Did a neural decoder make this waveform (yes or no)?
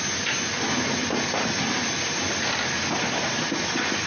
no